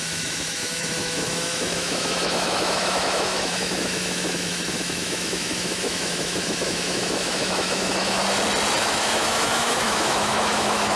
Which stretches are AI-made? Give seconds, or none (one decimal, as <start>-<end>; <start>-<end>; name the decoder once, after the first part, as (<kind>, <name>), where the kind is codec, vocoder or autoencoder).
0.0-8.2 (autoencoder, DAC-VAE); 8.8-11.0